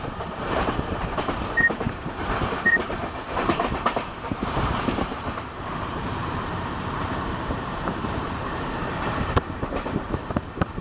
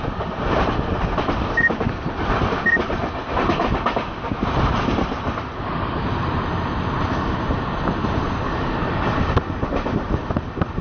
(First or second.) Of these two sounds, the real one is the second